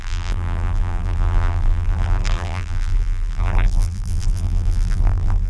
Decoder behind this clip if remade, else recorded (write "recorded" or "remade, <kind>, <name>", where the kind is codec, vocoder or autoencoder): remade, vocoder, BigVGAN v2